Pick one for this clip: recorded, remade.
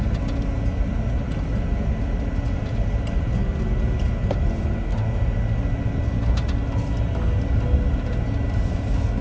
recorded